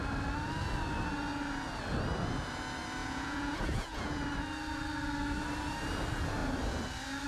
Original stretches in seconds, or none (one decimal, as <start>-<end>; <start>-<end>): 0.0-3.0; 4.2-7.3

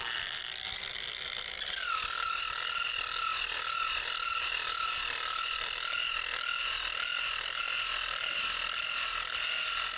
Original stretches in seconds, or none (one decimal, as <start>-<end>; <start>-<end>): 0.0-10.0

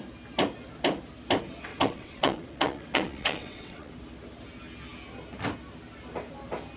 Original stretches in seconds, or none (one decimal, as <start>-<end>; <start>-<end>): 0.0-1.7; 3.9-6.8

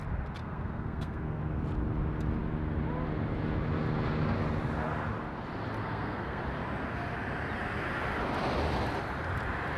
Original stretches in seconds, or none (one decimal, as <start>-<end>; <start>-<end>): 0.0-0.4; 1.4-5.8; 6.4-9.8